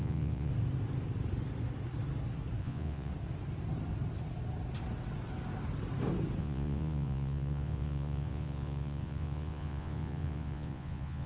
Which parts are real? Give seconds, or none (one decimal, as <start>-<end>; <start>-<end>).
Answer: 0.5-2.6; 3.1-6.4